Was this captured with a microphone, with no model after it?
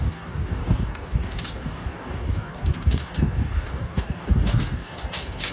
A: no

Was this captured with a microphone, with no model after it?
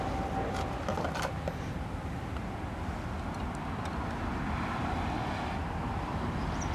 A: yes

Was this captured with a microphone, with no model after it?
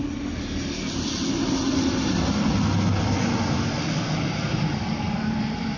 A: yes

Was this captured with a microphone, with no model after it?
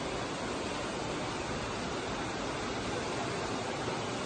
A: yes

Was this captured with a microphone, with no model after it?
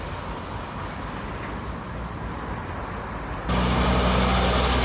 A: yes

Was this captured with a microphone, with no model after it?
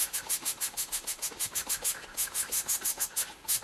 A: no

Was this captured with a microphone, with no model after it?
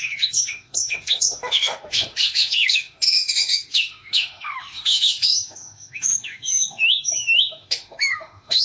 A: no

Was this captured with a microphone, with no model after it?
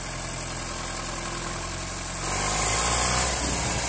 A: yes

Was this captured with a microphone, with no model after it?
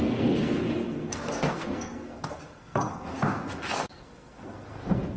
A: no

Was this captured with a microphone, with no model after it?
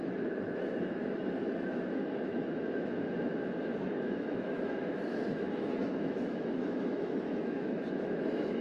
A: no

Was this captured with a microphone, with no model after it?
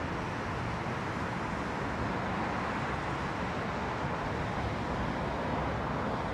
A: yes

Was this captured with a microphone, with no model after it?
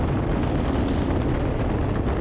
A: yes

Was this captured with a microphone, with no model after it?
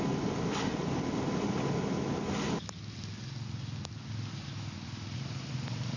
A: yes